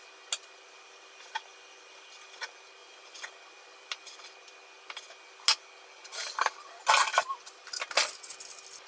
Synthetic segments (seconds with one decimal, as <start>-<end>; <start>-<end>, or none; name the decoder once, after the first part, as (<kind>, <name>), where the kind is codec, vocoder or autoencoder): 2.8-3.3 (vocoder, Vocos)